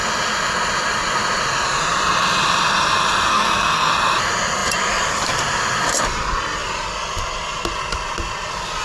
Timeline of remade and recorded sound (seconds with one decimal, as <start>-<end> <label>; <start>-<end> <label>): 0.0-3.3 recorded; 3.3-3.9 remade; 3.9-8.8 recorded